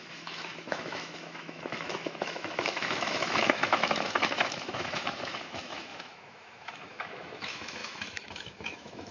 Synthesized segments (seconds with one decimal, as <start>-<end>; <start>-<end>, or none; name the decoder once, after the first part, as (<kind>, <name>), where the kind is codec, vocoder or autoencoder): 0.0-9.1 (autoencoder, DAC-VAE)